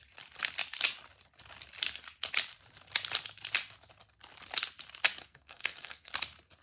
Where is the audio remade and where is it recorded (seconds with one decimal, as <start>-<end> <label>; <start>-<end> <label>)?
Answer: 0.0-5.2 recorded; 5.2-6.1 remade; 6.1-6.6 recorded